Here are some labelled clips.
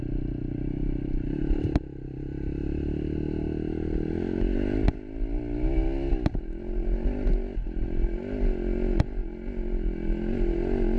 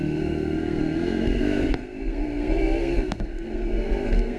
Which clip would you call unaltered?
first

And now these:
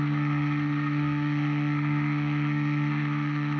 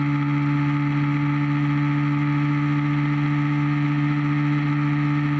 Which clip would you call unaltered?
second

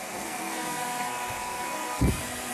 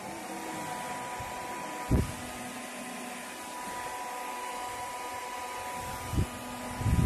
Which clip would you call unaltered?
second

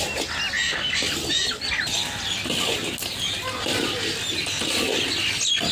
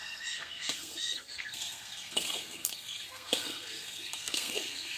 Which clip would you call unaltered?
first